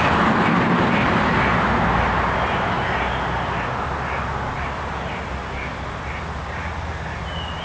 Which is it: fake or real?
real